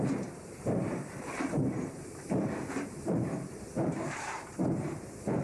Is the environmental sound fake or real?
fake